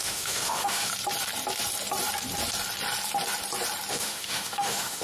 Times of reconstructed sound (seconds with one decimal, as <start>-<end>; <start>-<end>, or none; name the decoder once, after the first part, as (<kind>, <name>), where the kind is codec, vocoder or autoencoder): 0.0-0.9 (autoencoder, DAC-VAE); 3.9-5.0